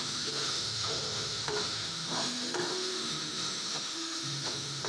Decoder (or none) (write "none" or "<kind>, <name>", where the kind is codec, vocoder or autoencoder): autoencoder, DAC-VAE